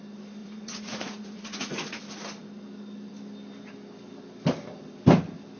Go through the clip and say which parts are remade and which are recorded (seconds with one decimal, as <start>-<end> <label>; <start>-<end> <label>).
0.0-0.4 recorded; 0.4-2.0 remade; 2.0-5.6 recorded